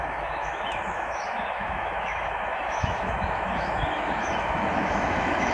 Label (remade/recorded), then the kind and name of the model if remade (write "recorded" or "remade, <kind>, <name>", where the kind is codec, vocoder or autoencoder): remade, autoencoder, DAC-VAE